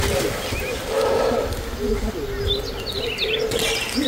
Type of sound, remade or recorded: recorded